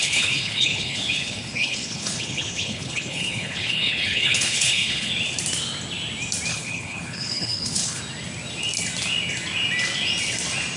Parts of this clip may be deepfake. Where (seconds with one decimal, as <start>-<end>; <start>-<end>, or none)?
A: 0.0-5.1; 6.5-8.0